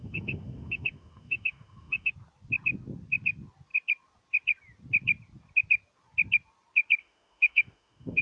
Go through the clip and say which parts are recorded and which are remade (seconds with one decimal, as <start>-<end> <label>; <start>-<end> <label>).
0.0-2.1 remade; 2.1-7.0 recorded; 7.0-8.2 remade